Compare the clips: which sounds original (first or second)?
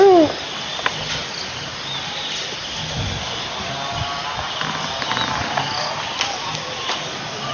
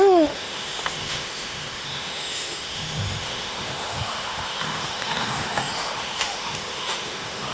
first